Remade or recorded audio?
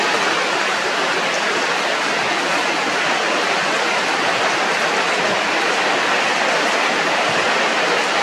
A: recorded